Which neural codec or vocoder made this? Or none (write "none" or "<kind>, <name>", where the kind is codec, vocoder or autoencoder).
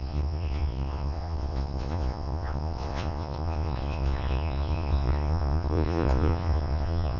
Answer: vocoder, Vocos